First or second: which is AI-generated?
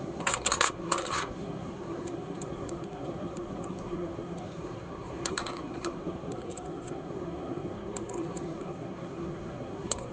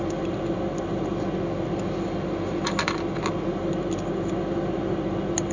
first